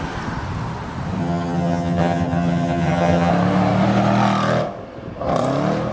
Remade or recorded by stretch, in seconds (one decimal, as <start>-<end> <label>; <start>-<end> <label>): 0.0-1.2 recorded; 1.2-3.3 remade; 3.3-5.9 recorded